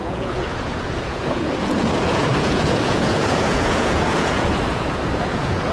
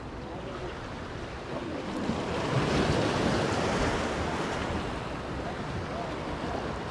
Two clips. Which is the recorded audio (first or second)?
second